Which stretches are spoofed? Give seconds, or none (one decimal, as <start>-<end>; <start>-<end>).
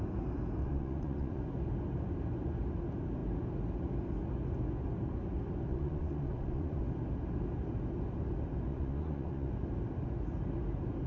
0.6-1.4; 5.7-6.8; 8.7-9.5